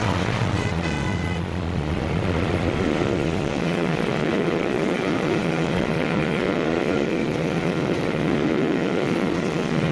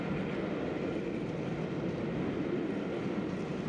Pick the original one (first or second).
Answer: second